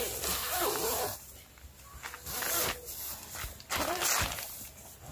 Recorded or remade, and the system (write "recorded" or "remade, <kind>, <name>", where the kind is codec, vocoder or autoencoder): recorded